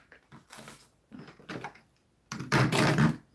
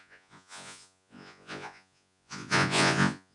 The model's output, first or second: second